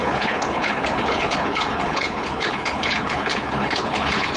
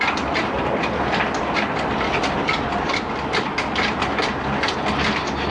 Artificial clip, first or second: first